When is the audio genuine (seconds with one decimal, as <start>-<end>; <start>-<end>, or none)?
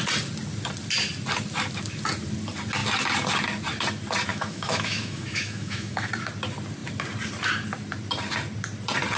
0.0-4.3; 6.1-9.2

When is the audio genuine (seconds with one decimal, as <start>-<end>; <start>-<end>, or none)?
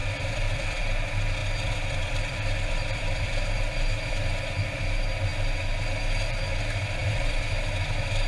0.8-1.4; 4.1-7.0; 7.6-8.3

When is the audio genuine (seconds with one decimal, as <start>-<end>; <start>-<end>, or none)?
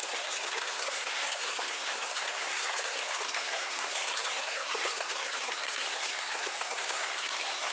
none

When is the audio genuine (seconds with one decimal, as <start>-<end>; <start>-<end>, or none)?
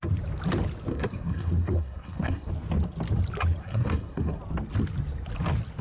0.0-0.9; 2.5-3.6; 4.4-5.8